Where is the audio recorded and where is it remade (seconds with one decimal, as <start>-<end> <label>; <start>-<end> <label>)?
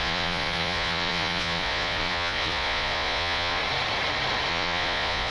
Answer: 0.0-3.6 remade; 3.6-4.5 recorded; 4.5-5.3 remade